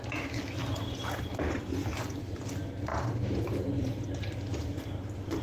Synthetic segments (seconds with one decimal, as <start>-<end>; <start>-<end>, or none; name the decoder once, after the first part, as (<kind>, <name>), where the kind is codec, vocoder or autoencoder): 0.6-1.2 (vocoder, BigVGAN v2); 2.9-4.1